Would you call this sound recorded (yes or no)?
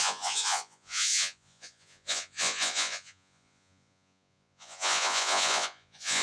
no